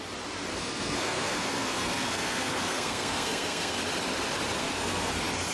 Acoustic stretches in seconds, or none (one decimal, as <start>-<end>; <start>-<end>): 0.0-0.5; 3.8-4.6; 5.1-5.5

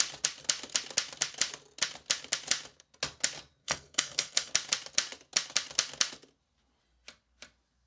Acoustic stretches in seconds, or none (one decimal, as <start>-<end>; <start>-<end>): 0.0-3.6; 4.5-7.9

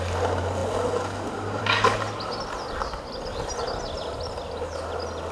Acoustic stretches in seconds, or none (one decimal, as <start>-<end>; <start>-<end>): 0.0-5.3

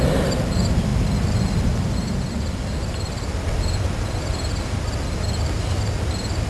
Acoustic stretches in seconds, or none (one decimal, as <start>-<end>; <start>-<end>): 0.0-6.5